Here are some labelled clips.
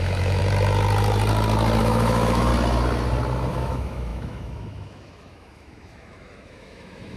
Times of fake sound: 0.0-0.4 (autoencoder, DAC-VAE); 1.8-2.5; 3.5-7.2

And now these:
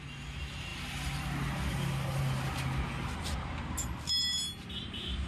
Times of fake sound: none

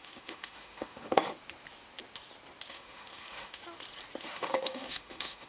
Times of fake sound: 0.0-1.3 (autoencoder, DAC-VAE); 2.7-3.6; 4.2-5.5

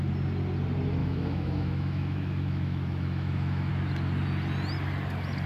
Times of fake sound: 1.0-3.7 (autoencoder, DAC-VAE)

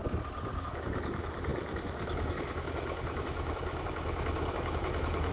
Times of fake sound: 0.6-5.3 (autoencoder, DAC-VAE)

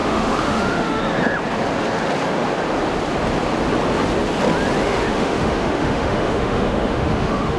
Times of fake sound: 0.0-1.0 (autoencoder, DAC-VAE); 4.8-7.6